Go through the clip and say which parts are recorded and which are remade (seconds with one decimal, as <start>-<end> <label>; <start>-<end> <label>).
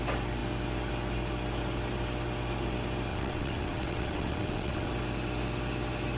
0.0-3.1 recorded; 3.1-4.9 remade; 4.9-6.2 recorded